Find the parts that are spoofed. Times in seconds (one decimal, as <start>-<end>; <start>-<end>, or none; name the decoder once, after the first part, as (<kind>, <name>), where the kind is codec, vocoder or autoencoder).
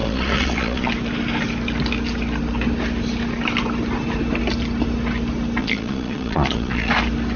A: 0.0-0.9 (vocoder, Vocos); 5.6-6.9